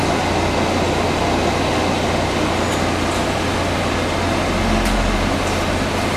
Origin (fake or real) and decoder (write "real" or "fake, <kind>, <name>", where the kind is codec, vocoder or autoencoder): real